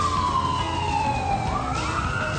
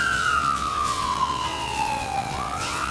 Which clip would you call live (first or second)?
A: first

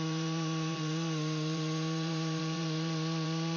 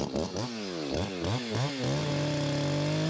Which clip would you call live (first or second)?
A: second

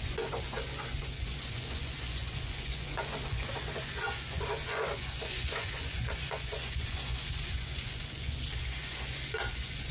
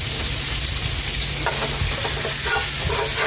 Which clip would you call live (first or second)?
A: second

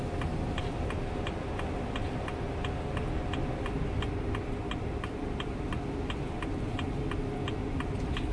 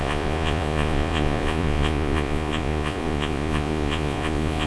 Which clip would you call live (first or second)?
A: first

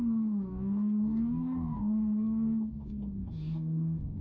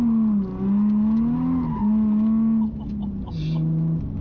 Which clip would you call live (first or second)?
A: second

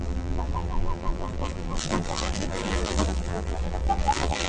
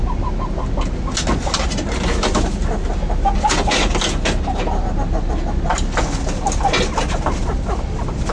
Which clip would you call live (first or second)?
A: second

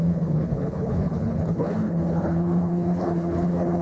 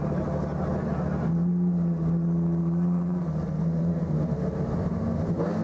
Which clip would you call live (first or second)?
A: second